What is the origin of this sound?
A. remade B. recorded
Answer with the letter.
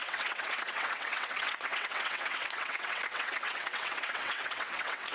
A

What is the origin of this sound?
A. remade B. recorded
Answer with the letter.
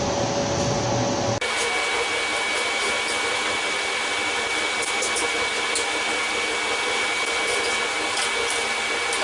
B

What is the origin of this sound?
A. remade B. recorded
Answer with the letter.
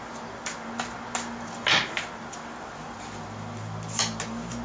B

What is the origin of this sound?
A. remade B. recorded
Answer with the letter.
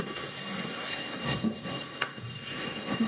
A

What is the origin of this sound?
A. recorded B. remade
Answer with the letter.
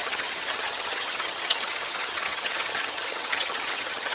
B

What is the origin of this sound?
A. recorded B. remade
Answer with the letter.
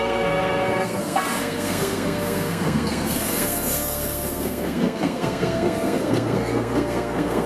B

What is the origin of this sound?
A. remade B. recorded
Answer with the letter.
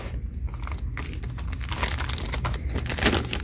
B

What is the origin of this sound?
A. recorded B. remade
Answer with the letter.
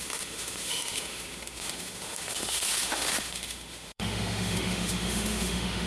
B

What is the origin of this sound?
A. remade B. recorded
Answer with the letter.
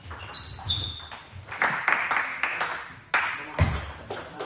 B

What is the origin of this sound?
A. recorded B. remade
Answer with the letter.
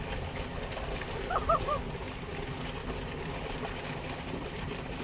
A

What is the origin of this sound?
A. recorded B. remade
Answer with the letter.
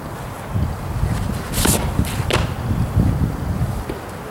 A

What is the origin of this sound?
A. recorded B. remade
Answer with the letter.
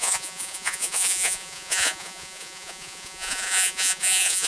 B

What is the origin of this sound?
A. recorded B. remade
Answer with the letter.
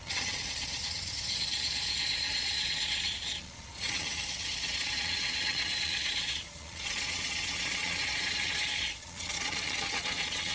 B